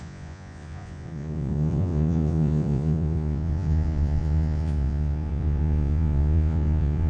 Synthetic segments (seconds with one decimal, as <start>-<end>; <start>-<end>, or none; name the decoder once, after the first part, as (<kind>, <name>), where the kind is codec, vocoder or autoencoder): 0.0-7.1 (vocoder, Vocos)